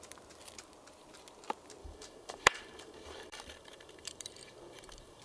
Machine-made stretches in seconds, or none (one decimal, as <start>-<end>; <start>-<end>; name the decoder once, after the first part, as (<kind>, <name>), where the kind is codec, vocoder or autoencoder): 1.8-5.2 (vocoder, BigVGAN v2)